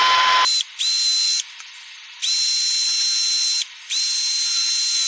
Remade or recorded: recorded